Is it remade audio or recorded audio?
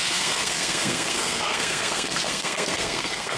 remade